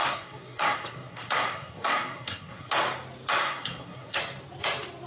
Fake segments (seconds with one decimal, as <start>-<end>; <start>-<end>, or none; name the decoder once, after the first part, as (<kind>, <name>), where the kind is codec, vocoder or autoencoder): 0.0-2.7 (codec, SNAC); 3.4-4.2